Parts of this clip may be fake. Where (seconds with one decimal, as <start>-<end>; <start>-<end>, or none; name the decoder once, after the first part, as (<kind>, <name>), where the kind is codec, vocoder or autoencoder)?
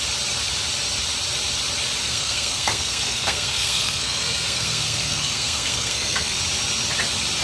2.0-6.4 (codec, SNAC)